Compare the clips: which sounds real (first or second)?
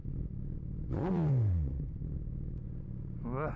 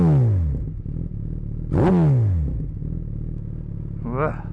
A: second